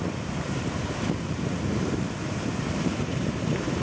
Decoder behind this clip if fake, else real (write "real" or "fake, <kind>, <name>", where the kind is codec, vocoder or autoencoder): fake, vocoder, BigVGAN v2